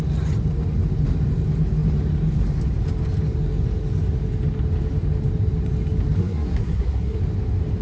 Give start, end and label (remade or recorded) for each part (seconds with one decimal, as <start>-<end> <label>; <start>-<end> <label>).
0.0-6.2 recorded; 6.2-7.2 remade; 7.2-7.8 recorded